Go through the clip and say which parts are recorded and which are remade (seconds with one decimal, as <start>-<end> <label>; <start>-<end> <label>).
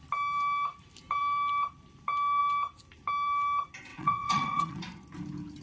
0.0-3.9 recorded; 3.9-4.8 remade; 4.8-5.6 recorded